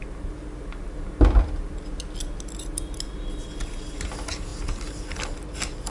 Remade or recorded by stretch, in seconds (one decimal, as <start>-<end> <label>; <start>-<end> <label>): 0.0-5.9 recorded